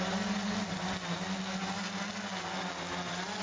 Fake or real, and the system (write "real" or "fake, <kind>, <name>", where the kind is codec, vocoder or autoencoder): real